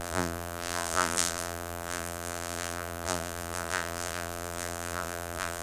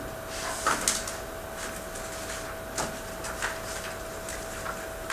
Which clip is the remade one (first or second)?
first